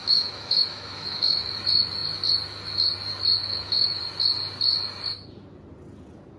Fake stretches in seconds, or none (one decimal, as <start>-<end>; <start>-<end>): 0.0-1.6; 3.4-4.0